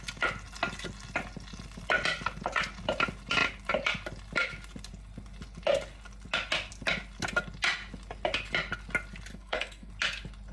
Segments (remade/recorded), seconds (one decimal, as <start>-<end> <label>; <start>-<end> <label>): 0.0-9.3 recorded; 9.3-9.9 remade; 9.9-10.5 recorded